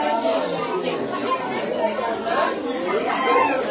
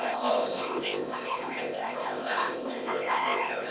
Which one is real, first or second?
first